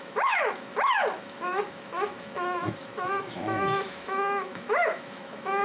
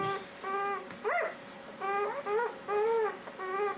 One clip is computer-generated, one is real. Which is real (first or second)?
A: second